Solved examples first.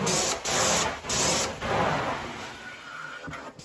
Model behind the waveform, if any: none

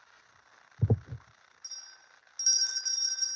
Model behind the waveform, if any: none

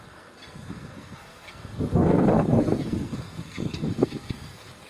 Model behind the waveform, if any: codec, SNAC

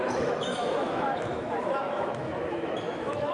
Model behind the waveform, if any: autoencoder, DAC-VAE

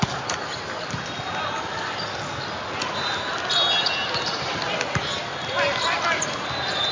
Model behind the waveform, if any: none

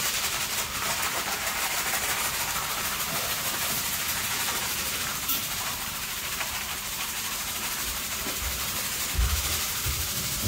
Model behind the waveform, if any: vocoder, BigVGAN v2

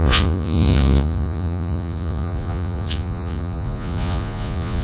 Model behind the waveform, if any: vocoder, Vocos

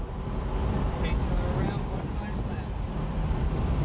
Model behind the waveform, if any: none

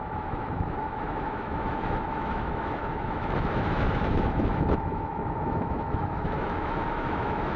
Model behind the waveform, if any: autoencoder, DAC-VAE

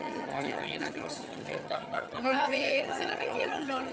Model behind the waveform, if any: vocoder, HiFi-GAN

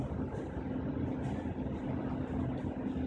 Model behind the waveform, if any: none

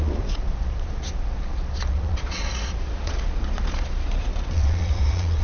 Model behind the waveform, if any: vocoder, Vocos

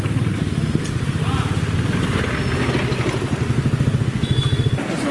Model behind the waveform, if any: none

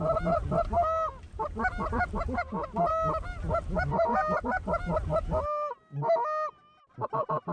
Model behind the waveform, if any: none